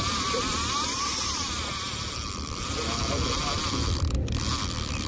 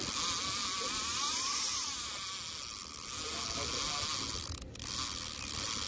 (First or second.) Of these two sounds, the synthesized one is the first